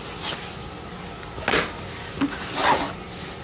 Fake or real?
real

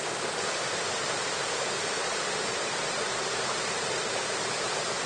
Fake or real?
real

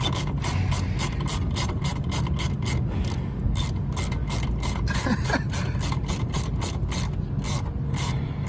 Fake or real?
real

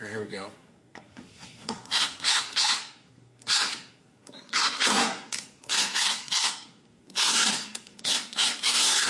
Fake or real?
fake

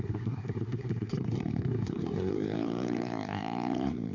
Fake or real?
fake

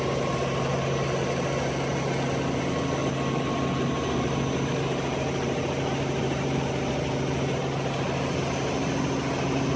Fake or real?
real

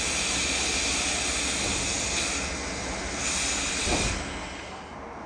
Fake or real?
real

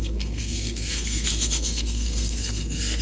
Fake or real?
fake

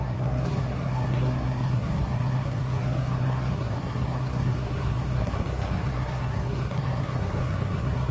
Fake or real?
fake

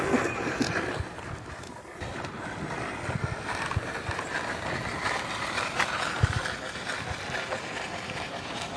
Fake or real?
real